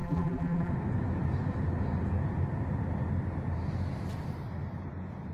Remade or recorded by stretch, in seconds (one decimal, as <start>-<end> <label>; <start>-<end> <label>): 0.0-0.7 remade; 0.7-5.3 recorded